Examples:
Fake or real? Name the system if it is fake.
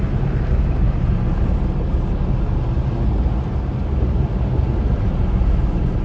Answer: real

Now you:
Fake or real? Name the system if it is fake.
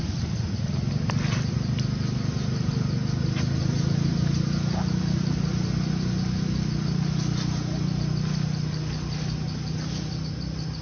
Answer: real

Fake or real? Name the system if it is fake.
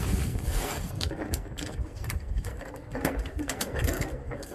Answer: fake, codec, SNAC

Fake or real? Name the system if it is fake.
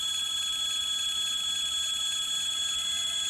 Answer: real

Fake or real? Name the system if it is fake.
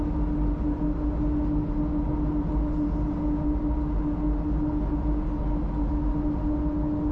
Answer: real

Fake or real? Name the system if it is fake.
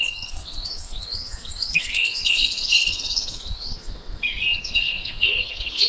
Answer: fake, codec, SNAC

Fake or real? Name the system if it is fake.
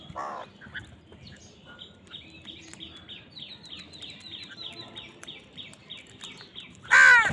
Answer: real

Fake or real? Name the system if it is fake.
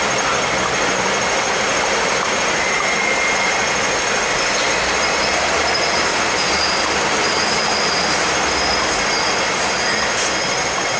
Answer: real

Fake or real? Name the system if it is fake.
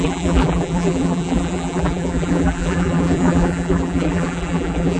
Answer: fake, vocoder, BigVGAN v2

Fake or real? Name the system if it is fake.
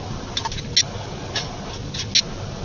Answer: real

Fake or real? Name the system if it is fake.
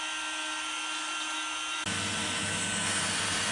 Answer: real